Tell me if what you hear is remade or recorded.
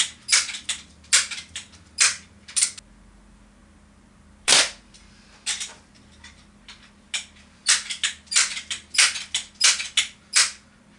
recorded